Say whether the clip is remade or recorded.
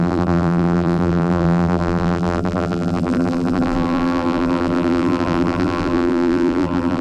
remade